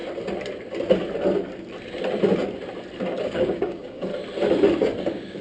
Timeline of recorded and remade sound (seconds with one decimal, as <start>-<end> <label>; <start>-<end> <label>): 0.0-3.2 recorded; 3.2-4.1 remade; 4.1-5.0 recorded; 5.0-5.4 remade